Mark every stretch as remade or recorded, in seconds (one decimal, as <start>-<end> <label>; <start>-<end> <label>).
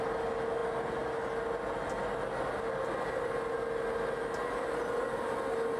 0.0-5.8 recorded